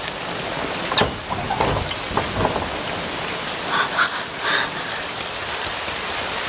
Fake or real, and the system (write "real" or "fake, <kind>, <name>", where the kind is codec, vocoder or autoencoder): real